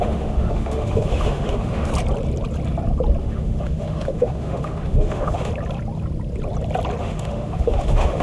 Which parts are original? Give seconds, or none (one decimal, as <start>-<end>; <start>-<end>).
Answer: 1.9-3.2; 5.5-7.0